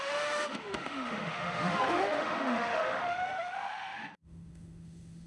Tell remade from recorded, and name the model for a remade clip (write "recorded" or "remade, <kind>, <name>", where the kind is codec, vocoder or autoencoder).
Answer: remade, autoencoder, DAC-VAE